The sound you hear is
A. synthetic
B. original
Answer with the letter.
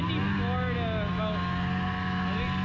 B